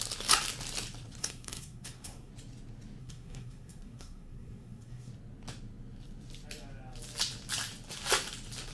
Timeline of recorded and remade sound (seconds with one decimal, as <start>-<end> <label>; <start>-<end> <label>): 0.0-1.2 recorded; 1.2-2.3 remade; 2.3-3.0 recorded; 3.0-5.1 remade; 5.1-8.7 recorded